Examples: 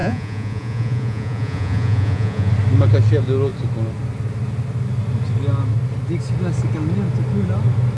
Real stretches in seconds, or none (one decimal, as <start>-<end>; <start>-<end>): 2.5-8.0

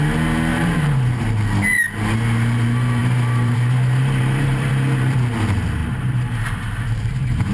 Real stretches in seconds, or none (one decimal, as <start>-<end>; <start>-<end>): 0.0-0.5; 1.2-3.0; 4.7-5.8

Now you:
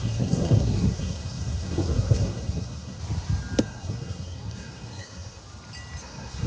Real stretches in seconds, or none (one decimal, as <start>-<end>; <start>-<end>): 3.0-3.6; 5.4-6.0

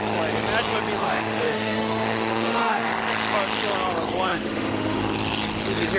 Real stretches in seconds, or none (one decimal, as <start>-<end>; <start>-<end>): 0.0-1.0; 2.9-4.3; 5.0-6.0

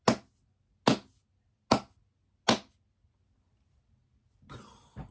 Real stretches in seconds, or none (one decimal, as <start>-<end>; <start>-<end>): 0.0-5.1